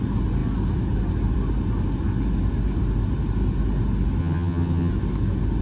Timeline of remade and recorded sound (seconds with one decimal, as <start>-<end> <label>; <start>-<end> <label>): 0.0-4.2 recorded; 4.2-4.9 remade; 4.9-5.6 recorded